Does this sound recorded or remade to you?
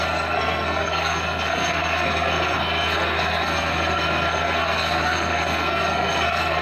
remade